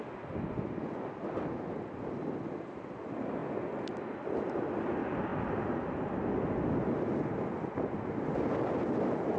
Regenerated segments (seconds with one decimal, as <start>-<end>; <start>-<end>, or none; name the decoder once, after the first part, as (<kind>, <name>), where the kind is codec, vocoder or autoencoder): none